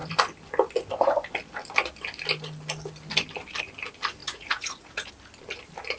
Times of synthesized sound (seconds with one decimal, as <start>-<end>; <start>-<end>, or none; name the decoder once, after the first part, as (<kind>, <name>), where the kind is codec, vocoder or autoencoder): 4.2-5.1 (vocoder, Vocos)